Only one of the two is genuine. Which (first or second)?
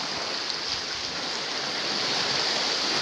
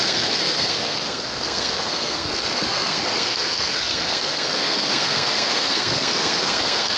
first